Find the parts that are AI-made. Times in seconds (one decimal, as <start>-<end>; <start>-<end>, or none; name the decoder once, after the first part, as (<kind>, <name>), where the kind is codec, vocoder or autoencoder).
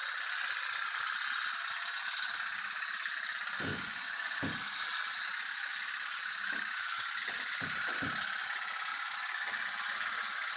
3.7-4.4 (vocoder, Vocos); 8.9-10.6